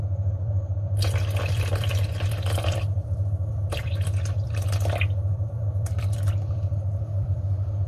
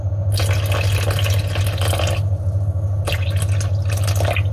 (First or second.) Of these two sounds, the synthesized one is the first